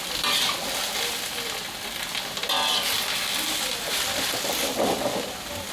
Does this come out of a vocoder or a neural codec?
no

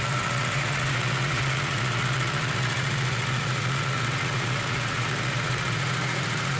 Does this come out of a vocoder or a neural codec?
yes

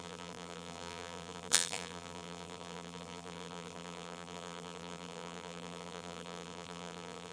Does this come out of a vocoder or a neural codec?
yes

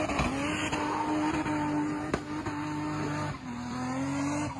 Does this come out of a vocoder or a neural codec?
no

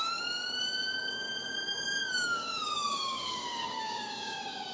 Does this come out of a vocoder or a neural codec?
yes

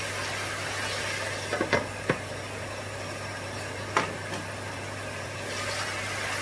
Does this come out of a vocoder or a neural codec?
no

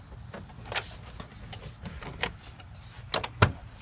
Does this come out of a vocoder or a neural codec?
no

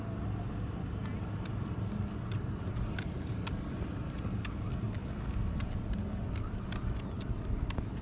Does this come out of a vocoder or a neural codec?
no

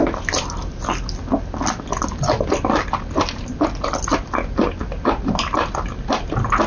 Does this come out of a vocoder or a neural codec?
no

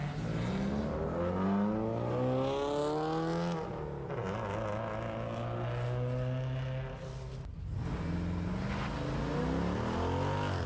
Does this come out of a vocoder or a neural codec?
no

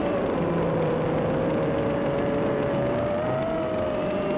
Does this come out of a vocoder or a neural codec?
no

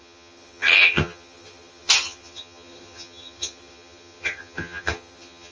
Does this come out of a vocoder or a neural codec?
yes